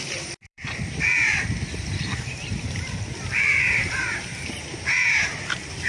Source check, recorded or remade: remade